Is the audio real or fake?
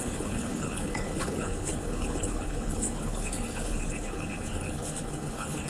fake